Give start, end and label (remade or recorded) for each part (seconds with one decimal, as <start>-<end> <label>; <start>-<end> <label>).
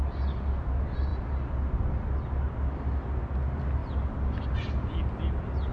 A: 0.0-5.7 recorded